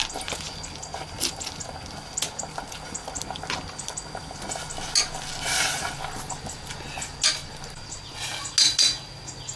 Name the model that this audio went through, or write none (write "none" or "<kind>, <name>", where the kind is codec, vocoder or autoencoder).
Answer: none